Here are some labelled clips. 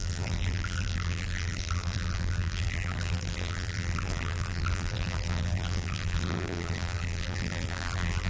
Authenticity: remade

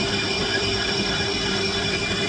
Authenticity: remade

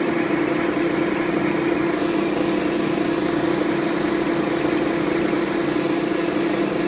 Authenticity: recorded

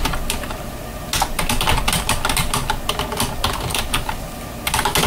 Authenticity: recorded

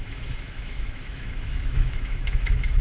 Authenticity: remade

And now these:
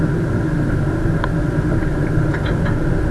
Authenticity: recorded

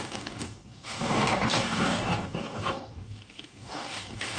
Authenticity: remade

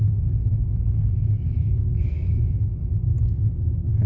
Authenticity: remade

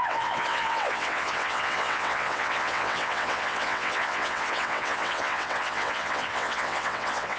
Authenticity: remade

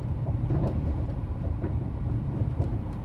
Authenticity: remade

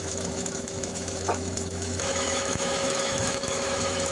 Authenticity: remade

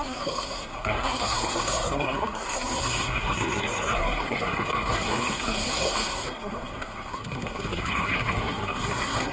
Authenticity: remade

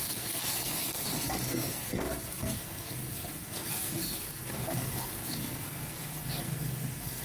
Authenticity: remade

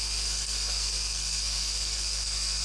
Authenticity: remade